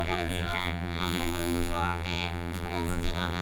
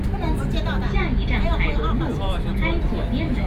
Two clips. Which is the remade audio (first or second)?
first